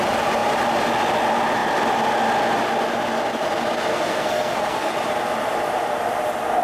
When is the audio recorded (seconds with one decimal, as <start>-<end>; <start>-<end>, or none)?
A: 0.0-3.9; 4.9-6.6